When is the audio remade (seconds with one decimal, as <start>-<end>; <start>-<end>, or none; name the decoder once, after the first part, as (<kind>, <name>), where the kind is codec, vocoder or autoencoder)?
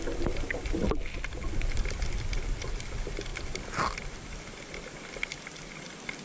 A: none